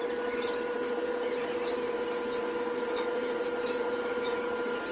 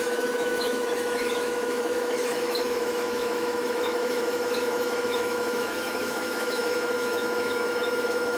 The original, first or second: first